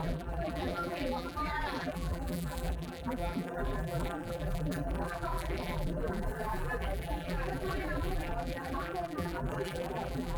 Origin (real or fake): fake